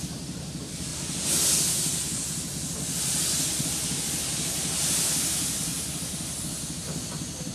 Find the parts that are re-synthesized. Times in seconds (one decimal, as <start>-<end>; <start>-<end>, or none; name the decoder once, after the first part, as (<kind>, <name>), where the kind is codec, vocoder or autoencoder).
none